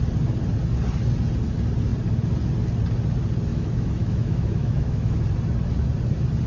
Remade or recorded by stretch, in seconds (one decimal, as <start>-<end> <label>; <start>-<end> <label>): 0.0-3.5 recorded; 3.5-5.2 remade; 5.2-6.5 recorded